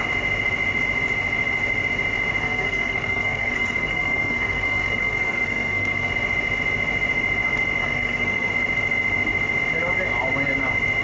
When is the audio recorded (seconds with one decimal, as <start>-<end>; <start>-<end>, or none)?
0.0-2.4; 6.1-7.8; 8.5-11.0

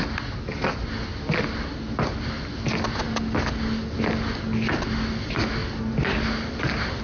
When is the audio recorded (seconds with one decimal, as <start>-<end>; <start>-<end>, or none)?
0.0-7.0

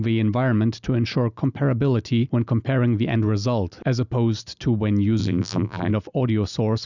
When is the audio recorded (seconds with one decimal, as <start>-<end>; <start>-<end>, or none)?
0.0-5.2; 5.9-6.9